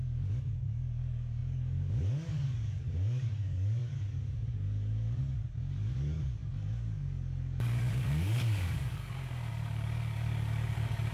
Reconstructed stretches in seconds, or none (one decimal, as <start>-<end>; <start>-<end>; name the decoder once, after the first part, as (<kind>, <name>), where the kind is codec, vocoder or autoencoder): 0.0-11.1 (codec, DAC)